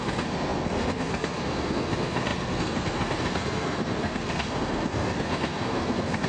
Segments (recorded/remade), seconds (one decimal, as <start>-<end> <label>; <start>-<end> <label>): 0.0-6.3 remade